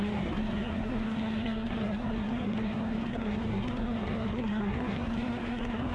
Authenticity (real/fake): fake